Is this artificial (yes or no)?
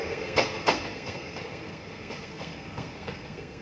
yes